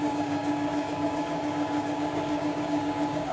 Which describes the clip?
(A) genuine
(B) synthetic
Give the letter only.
B